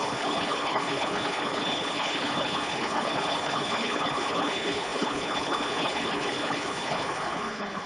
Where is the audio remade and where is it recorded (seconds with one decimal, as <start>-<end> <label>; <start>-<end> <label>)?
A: 0.0-7.9 remade